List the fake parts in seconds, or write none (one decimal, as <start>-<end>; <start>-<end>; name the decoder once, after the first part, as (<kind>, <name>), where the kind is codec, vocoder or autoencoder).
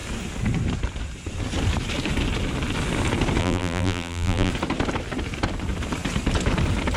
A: 3.4-4.5 (vocoder, BigVGAN v2)